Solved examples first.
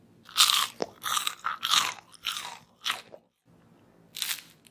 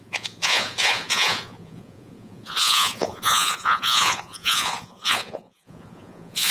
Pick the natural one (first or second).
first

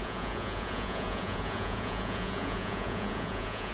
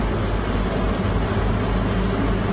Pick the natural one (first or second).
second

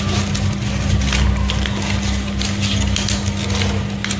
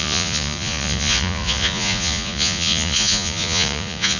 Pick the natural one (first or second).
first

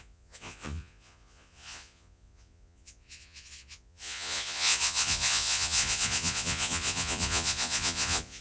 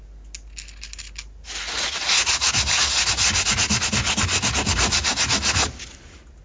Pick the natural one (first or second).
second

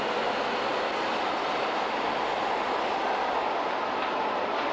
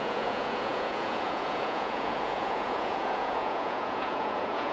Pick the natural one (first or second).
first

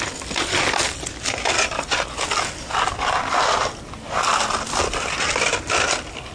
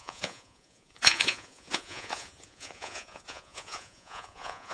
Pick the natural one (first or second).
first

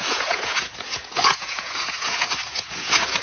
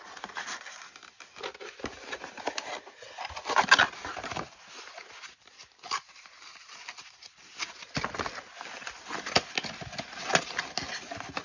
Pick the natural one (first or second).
second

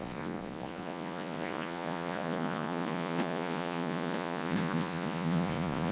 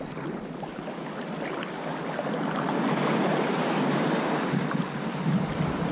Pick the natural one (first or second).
second